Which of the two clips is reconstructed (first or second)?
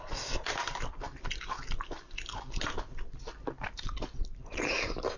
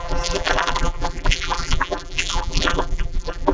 second